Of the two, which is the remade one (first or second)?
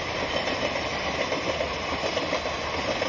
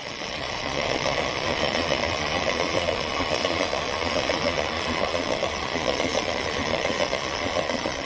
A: second